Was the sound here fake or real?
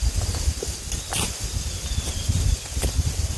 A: real